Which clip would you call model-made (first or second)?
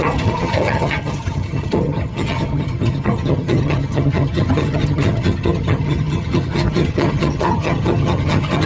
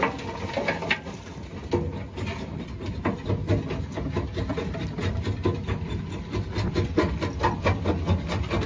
first